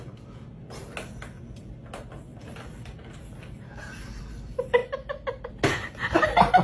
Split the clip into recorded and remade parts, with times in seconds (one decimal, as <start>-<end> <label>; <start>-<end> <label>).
0.0-6.6 recorded